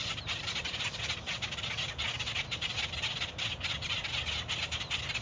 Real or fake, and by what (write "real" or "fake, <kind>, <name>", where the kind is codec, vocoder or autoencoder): real